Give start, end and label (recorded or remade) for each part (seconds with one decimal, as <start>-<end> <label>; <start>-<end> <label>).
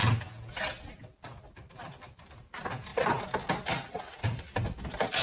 0.0-5.2 recorded